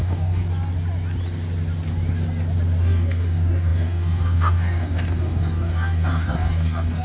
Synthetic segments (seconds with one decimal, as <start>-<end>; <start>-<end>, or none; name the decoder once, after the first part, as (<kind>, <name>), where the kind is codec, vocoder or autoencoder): 0.0-0.4 (codec, DAC); 2.8-7.0